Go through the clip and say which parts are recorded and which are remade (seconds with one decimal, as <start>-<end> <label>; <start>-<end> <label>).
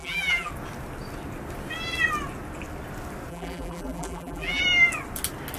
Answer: 0.0-0.5 remade; 0.5-3.3 recorded; 3.3-4.6 remade; 4.6-5.6 recorded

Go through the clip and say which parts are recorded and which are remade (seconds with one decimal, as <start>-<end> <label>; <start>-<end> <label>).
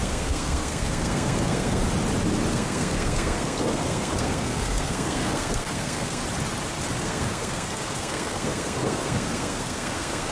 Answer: 0.0-1.8 remade; 1.8-2.5 recorded; 2.5-6.2 remade; 6.2-7.0 recorded; 7.0-10.3 remade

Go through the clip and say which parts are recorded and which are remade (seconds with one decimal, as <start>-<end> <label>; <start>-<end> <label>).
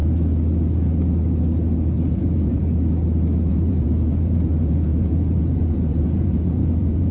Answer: 0.0-2.1 recorded; 2.1-2.6 remade; 2.6-3.5 recorded; 3.5-7.1 remade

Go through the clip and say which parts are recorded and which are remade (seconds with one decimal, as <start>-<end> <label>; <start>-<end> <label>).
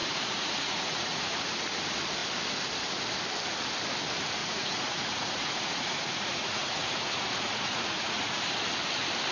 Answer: 0.0-1.6 remade; 1.6-4.4 recorded; 4.4-8.4 remade; 8.4-9.3 recorded